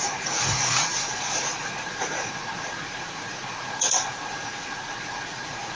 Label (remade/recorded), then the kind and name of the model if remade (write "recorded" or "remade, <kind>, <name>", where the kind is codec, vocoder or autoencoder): remade, vocoder, Vocos